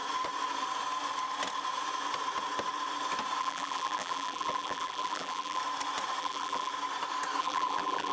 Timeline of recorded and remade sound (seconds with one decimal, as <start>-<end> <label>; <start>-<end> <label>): 0.0-3.4 recorded; 3.4-5.6 remade; 5.6-6.2 recorded; 6.2-6.7 remade; 6.7-7.4 recorded; 7.4-8.1 remade

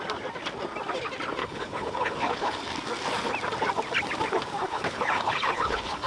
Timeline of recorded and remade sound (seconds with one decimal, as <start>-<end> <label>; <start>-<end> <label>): 0.0-1.4 recorded; 1.4-2.6 remade; 2.6-4.6 recorded; 4.6-6.1 remade